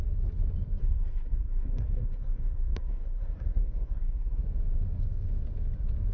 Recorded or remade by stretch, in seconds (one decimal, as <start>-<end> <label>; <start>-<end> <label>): 0.0-0.8 recorded; 0.8-4.4 remade; 4.4-6.1 recorded